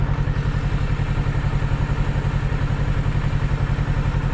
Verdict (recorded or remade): recorded